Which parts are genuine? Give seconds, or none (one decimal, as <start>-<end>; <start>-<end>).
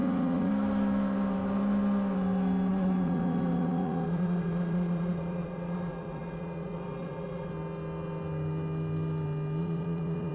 0.5-2.7; 7.5-9.6